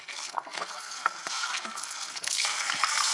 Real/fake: fake